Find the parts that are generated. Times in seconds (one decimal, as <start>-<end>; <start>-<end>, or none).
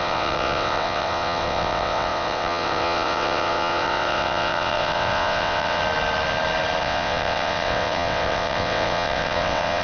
0.0-5.8; 6.8-9.8